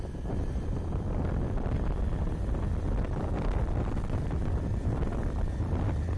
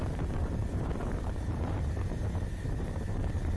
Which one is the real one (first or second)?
first